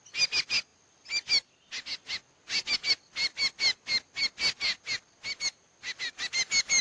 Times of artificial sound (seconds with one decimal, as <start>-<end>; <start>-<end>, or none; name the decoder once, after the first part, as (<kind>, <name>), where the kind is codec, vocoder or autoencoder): none